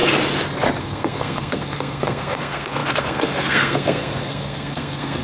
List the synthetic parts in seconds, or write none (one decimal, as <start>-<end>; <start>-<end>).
0.8-5.2